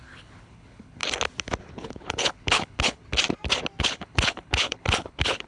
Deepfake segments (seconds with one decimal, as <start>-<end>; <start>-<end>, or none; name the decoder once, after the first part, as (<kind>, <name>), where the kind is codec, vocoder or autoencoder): 0.0-1.0 (codec, HILCodec); 1.6-3.0; 3.8-5.5